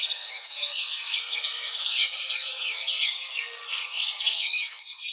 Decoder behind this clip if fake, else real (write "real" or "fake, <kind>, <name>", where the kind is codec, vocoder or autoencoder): fake, codec, SNAC